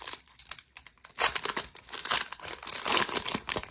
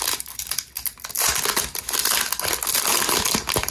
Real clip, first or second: second